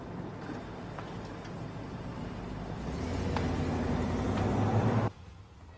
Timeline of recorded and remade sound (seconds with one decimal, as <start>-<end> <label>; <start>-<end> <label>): 0.0-5.8 recorded